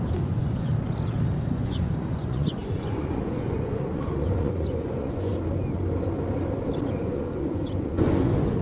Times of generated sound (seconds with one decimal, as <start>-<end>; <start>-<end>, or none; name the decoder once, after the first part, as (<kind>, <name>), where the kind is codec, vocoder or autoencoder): 0.0-0.7 (vocoder, Vocos); 1.5-5.3; 6.9-8.6